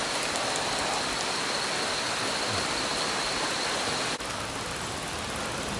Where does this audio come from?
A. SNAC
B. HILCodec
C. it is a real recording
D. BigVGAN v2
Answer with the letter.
C